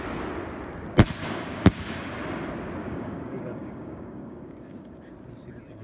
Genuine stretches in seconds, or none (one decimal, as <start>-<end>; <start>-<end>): 0.0-1.2; 2.1-2.8; 5.1-5.8